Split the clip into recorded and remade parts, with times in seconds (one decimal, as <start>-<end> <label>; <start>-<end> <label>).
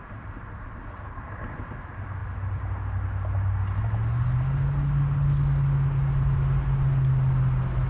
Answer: 0.0-7.9 recorded